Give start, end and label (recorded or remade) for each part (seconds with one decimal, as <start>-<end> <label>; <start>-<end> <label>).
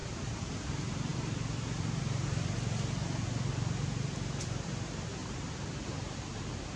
0.0-0.5 remade; 0.5-5.2 recorded; 5.2-6.8 remade